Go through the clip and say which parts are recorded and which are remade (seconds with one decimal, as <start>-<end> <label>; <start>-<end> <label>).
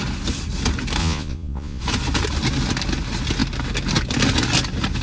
0.0-1.0 recorded; 1.0-1.8 remade; 1.8-5.0 recorded